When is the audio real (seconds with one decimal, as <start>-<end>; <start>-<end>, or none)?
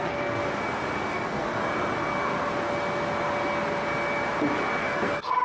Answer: 0.4-1.1; 1.6-4.8